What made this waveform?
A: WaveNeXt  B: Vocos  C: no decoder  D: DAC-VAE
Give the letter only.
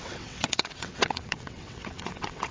A